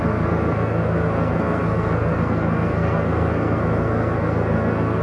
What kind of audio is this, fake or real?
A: fake